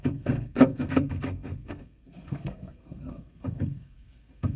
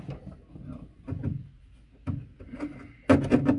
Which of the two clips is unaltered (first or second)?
second